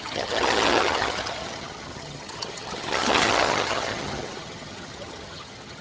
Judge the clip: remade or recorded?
remade